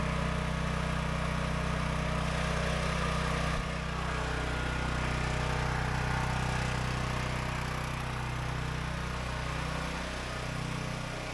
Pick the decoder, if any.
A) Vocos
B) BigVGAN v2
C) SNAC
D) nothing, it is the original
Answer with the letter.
D